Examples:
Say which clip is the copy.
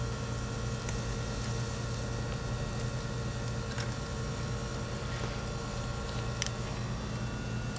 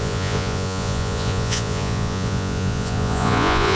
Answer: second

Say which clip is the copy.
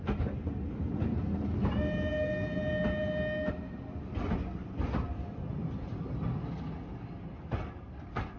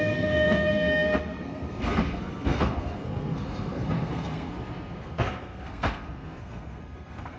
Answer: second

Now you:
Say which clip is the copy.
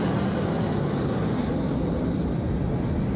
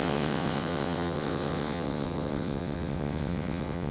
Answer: second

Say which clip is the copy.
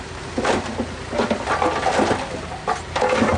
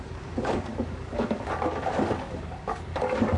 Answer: second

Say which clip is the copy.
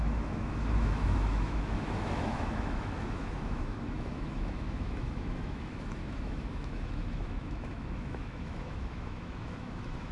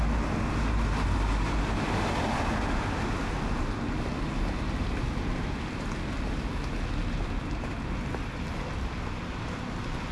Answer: first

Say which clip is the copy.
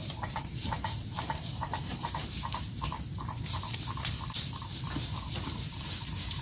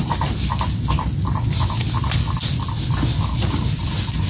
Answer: first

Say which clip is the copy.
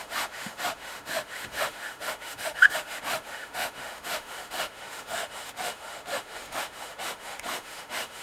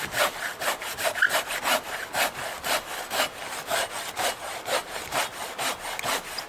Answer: first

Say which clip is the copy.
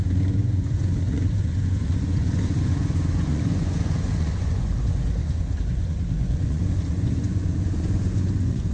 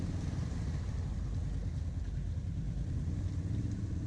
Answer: first